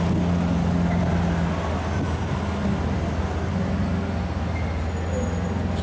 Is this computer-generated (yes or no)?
no